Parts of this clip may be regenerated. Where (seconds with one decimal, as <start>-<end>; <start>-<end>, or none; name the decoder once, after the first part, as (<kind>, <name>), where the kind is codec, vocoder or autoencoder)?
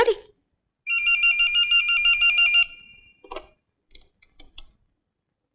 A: none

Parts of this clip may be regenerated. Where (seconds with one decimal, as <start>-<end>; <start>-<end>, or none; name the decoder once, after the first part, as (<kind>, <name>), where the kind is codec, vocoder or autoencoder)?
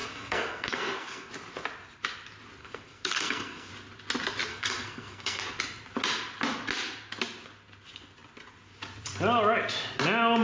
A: 0.0-1.3 (codec, SNAC); 2.6-3.7; 4.5-5.4